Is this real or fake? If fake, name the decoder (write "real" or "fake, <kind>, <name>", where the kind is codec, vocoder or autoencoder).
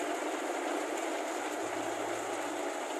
real